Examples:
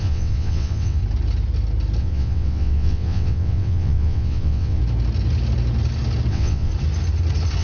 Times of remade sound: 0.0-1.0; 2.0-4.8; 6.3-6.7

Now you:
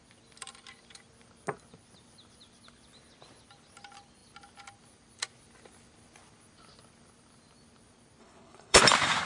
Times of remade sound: 8.2-8.8

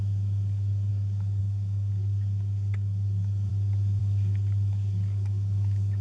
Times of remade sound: 0.0-3.5; 4.0-6.0